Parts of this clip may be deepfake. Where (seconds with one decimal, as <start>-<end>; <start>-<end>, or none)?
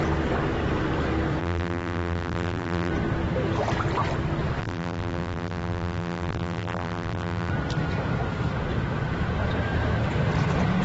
1.4-2.9; 4.6-7.5